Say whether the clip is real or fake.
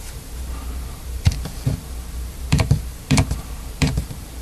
fake